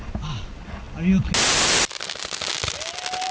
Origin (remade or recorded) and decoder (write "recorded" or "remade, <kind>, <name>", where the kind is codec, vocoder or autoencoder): recorded